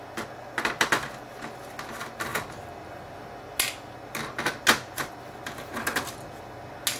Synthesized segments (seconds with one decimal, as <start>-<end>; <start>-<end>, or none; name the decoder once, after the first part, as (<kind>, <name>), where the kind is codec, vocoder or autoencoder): none